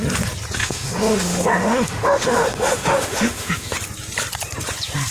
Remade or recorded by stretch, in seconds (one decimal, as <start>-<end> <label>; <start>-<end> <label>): 0.0-0.6 recorded; 0.6-3.7 remade; 3.7-5.1 recorded